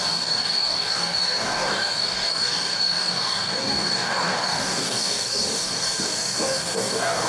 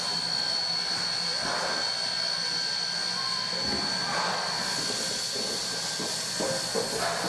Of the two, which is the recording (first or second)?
second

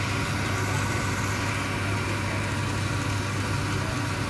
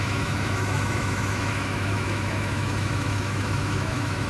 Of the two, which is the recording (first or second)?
first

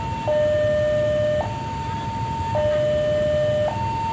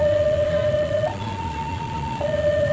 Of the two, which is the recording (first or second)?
first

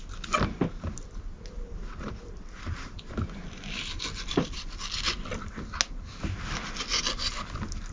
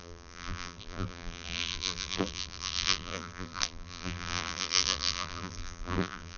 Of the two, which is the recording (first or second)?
first